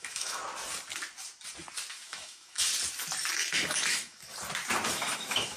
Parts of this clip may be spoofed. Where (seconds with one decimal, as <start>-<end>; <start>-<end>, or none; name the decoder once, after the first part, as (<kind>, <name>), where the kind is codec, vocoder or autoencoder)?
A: 0.0-0.4 (autoencoder, DAC-VAE); 1.9-2.7; 3.3-4.3; 4.9-5.6